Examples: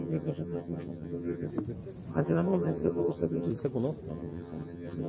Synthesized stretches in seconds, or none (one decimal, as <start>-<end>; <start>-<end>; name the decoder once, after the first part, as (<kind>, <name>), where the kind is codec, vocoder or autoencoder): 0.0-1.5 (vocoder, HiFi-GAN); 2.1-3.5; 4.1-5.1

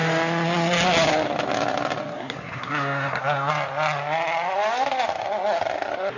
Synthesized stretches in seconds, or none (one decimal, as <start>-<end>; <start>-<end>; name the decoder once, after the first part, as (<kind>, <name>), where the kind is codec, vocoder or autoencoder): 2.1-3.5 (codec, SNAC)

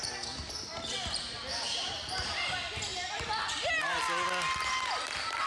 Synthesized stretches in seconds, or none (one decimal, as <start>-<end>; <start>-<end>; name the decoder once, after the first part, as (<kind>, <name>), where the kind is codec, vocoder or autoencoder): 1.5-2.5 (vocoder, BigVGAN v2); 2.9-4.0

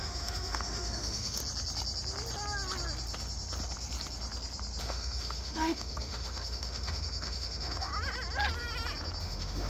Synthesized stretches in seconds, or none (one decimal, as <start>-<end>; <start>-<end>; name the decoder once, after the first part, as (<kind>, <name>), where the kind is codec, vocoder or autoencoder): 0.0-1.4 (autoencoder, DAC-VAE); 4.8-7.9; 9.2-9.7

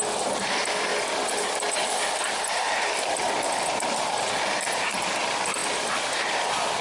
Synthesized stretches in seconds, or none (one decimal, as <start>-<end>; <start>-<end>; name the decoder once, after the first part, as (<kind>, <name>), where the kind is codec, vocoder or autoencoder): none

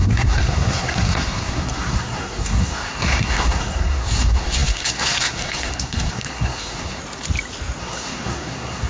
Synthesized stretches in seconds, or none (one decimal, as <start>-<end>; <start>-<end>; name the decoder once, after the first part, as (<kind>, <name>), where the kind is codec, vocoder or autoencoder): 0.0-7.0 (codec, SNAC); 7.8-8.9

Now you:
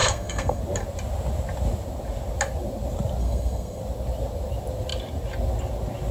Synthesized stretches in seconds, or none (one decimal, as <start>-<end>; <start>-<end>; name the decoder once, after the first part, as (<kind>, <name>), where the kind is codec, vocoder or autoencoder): 0.0-0.6 (codec, SNAC); 3.2-3.8

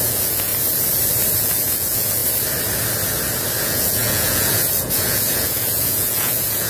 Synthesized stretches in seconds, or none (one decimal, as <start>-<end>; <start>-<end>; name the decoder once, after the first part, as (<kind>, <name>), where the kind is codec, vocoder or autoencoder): 0.0-0.5 (vocoder, Vocos); 1.4-2.2; 3.6-6.7